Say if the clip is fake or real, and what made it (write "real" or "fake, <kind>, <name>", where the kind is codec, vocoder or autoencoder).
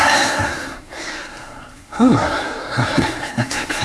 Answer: fake, codec, SNAC